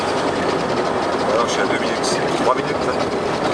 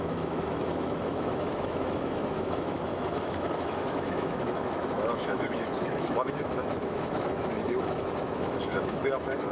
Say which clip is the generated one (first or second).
second